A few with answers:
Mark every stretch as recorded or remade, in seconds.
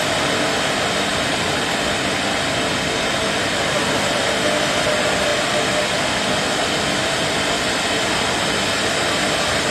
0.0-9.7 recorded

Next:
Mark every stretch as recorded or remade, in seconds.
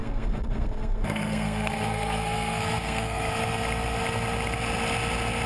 0.0-3.3 remade; 3.3-5.5 recorded